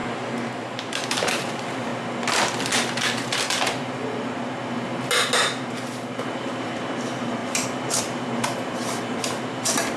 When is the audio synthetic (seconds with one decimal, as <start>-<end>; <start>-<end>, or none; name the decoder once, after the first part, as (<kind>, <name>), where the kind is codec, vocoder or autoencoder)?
0.6-1.9 (vocoder, BigVGAN v2); 6.4-10.0